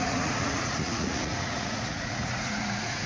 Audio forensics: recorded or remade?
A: remade